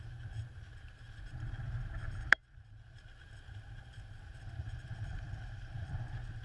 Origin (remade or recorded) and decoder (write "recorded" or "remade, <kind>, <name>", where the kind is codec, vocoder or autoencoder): remade, vocoder, BigVGAN v2